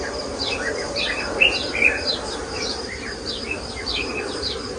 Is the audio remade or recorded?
remade